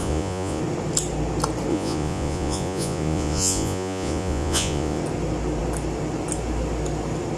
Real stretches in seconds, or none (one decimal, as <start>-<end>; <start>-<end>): 0.6-1.7; 5.0-7.4